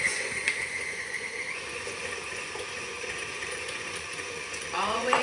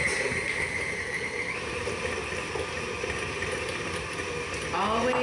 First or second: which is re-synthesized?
first